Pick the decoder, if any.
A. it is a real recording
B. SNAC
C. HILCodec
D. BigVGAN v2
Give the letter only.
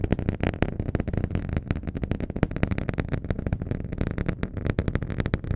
A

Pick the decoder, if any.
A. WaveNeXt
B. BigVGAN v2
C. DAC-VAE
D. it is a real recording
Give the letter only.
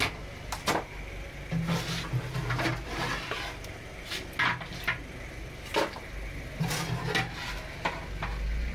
D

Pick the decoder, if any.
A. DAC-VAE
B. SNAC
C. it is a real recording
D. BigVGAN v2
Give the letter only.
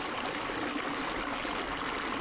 C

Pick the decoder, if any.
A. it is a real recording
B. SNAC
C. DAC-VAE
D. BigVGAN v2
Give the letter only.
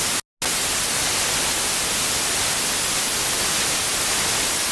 A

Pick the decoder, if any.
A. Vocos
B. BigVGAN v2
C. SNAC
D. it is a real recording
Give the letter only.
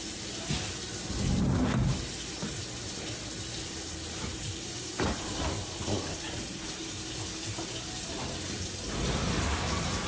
D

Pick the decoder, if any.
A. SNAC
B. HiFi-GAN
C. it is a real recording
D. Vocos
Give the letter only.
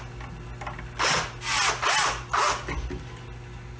C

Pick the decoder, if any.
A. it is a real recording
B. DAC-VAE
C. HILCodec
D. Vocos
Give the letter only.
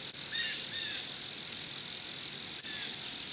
A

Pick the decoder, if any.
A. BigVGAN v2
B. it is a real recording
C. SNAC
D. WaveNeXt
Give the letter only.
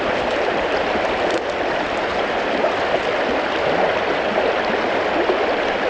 B